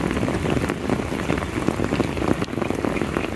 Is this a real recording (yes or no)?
yes